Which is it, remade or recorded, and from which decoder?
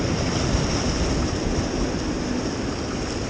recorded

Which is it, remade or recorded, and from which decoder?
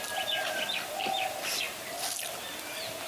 recorded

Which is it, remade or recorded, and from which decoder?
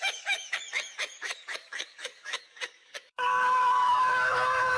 remade, codec, DAC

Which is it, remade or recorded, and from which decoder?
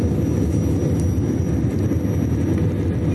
recorded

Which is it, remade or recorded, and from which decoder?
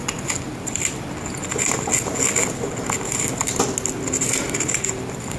recorded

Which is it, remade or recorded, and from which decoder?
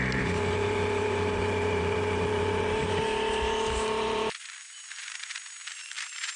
remade, vocoder, BigVGAN v2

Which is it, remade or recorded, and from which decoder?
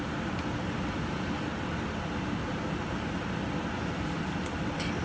recorded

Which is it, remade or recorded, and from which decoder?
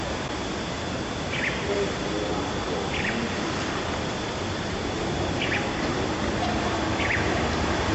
recorded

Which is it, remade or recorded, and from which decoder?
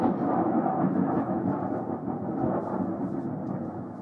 recorded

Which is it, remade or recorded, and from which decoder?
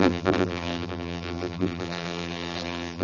remade, vocoder, BigVGAN v2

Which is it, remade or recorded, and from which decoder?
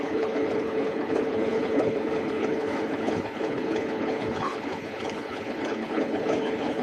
remade, codec, HILCodec